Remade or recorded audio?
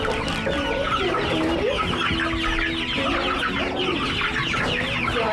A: recorded